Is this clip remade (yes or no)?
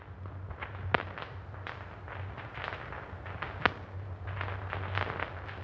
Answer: no